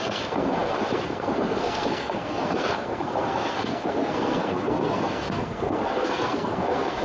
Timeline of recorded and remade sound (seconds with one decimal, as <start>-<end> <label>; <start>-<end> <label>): 0.0-7.0 remade